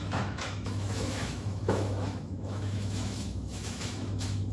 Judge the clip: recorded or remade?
remade